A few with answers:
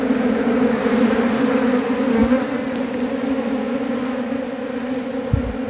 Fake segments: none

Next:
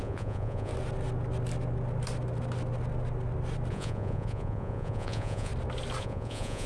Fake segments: 0.0-0.7 (vocoder, Vocos); 3.7-5.5; 6.0-6.7

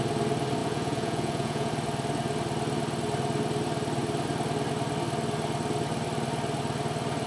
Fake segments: 0.6-1.7 (vocoder, Vocos)

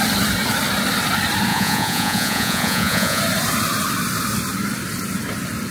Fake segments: 1.5-3.2 (vocoder, Vocos)

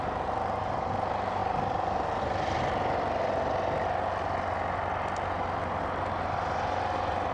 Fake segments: none

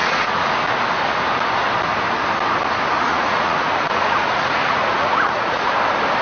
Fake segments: 0.0-0.5 (vocoder, Vocos); 3.1-5.6